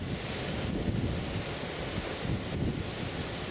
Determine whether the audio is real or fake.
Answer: real